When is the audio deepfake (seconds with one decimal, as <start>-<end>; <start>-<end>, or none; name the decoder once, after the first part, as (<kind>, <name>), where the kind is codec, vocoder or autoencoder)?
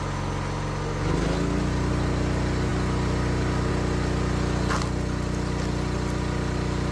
none